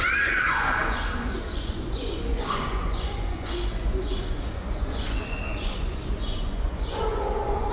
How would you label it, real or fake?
fake